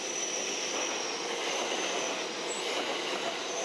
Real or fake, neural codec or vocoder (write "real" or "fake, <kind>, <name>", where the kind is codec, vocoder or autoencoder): real